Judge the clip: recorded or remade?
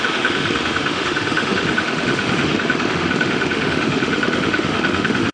remade